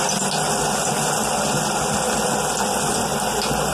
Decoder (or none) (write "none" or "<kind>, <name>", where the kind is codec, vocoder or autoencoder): none